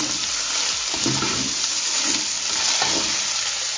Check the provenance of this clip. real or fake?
real